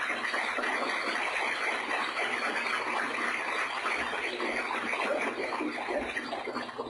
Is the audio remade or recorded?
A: remade